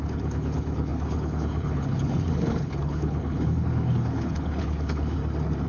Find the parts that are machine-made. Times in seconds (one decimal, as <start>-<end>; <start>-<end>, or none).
0.0-5.2

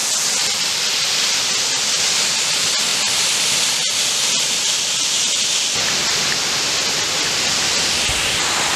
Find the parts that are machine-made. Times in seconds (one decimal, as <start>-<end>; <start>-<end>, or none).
none

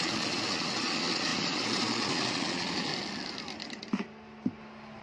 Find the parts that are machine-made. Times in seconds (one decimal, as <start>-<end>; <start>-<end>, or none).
0.0-2.9

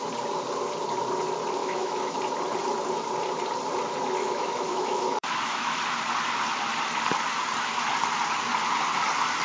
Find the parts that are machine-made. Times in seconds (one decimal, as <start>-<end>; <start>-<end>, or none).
1.6-2.2; 4.2-5.8

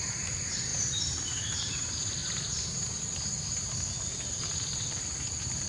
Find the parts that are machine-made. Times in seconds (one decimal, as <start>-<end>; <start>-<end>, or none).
0.0-2.2

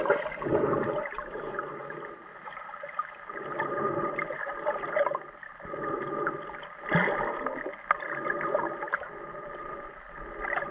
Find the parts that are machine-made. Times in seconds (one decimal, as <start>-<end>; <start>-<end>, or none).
none

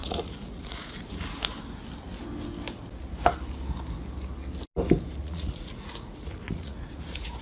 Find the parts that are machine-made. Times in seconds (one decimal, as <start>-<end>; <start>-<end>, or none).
0.0-1.5; 5.2-7.4

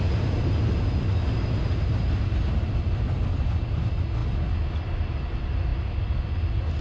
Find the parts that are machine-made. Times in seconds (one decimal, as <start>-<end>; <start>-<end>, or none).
none